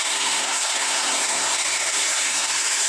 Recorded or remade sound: remade